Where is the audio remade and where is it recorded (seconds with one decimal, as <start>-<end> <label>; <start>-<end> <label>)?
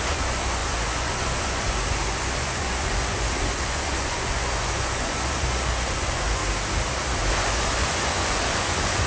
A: 0.0-6.4 remade; 6.4-7.3 recorded; 7.3-9.1 remade